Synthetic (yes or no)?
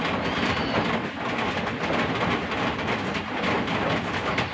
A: no